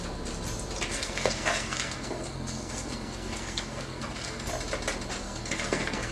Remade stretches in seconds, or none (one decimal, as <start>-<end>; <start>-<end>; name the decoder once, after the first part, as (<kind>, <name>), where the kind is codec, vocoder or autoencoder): 0.9-4.5 (codec, SNAC); 5.2-6.1